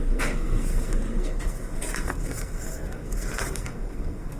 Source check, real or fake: fake